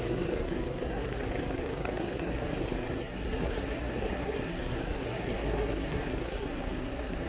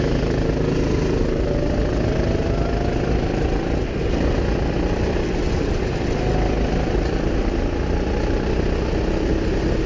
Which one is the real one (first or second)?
second